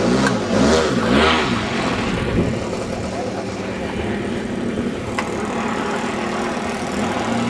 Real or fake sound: real